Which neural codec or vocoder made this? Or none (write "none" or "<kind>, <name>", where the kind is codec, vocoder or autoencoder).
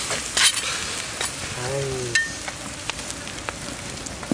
none